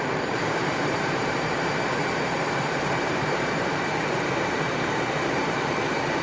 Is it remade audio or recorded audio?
remade